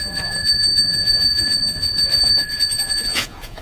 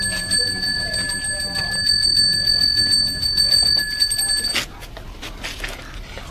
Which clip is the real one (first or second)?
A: second